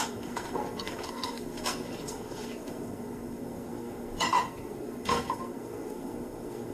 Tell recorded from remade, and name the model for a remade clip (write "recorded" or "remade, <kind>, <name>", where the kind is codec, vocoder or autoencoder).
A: remade, codec, SNAC